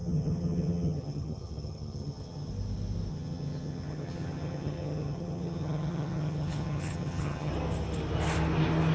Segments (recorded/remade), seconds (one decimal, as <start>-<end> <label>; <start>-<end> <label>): 0.0-2.5 remade; 2.5-3.1 recorded; 3.1-7.5 remade; 7.5-8.9 recorded